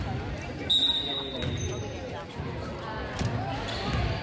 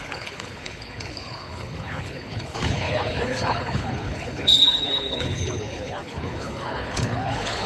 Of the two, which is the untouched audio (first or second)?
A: first